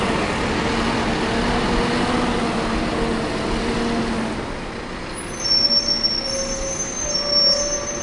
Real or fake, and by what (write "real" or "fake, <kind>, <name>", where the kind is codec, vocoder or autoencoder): real